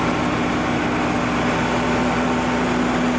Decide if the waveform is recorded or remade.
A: recorded